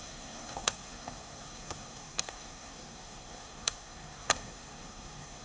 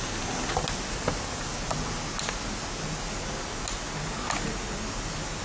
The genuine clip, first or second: second